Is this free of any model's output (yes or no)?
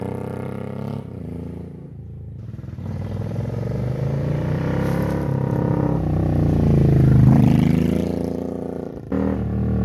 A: yes